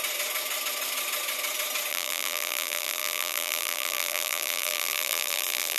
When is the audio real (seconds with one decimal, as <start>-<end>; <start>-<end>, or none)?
0.0-1.9